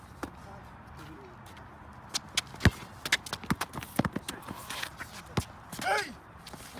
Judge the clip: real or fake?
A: real